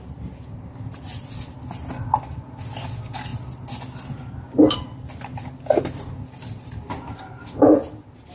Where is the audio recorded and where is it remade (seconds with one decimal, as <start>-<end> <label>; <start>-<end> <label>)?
0.0-8.3 recorded

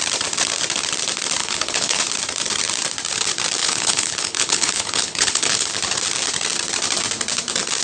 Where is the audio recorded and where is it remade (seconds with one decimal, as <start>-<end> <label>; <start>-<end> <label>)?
0.0-1.4 recorded; 1.4-2.0 remade; 2.0-3.6 recorded; 3.6-5.7 remade; 5.7-7.8 recorded

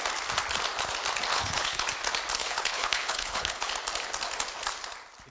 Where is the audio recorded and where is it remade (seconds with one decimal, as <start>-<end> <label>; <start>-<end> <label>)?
0.0-1.3 recorded; 1.3-1.8 remade; 1.8-2.4 recorded; 2.4-3.7 remade; 3.7-5.3 recorded

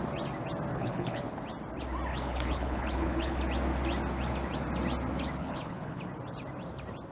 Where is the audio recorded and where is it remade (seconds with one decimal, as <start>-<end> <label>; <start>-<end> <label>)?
0.0-0.7 recorded; 0.7-1.2 remade; 1.2-2.1 recorded; 2.1-3.4 remade; 3.4-5.4 recorded; 5.4-6.0 remade; 6.0-7.1 recorded

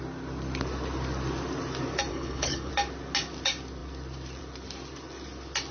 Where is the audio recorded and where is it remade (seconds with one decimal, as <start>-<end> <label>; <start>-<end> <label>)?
0.0-2.1 recorded; 2.1-2.7 remade; 2.7-5.7 recorded

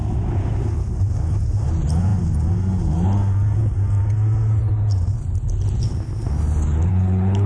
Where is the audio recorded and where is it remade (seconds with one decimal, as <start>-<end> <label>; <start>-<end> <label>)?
0.0-6.9 recorded; 6.9-7.5 remade

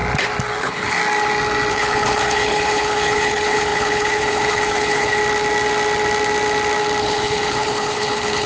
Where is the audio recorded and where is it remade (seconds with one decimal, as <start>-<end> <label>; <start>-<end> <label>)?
0.0-0.6 recorded; 0.6-1.0 remade; 1.0-1.7 recorded; 1.7-5.2 remade; 5.2-7.0 recorded; 7.0-8.5 remade